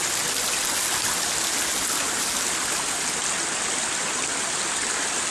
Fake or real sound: real